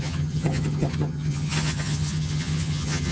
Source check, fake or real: fake